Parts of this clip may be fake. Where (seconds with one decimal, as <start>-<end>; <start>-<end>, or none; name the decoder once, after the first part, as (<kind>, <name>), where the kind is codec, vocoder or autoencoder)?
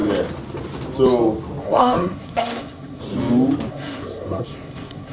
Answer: 1.6-3.0 (codec, SNAC); 3.7-5.1